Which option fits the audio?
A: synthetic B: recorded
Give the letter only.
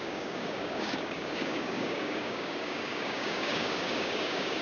A